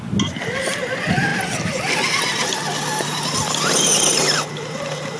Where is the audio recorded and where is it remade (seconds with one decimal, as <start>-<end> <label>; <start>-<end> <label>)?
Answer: 0.0-5.2 recorded